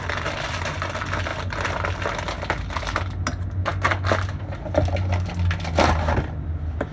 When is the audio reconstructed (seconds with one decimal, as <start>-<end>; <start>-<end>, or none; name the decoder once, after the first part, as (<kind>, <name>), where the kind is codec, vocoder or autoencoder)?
none